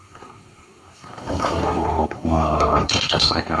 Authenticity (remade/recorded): remade